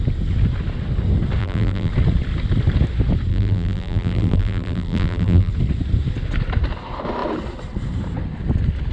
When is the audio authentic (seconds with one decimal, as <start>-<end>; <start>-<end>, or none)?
0.0-1.4; 1.9-3.3; 5.5-8.9